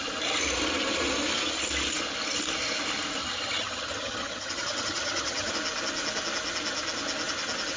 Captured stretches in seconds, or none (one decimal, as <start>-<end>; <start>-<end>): 0.0-3.2; 5.5-7.8